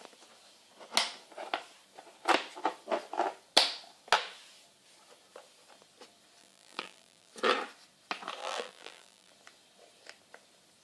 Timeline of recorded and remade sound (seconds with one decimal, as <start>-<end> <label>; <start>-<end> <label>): 0.0-6.4 recorded; 6.4-7.3 remade; 7.3-8.4 recorded; 8.4-9.3 remade; 9.3-10.8 recorded